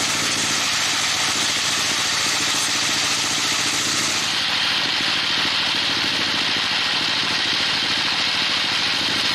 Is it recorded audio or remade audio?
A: recorded